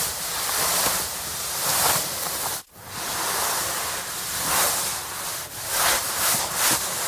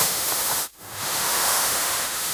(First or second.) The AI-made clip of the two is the second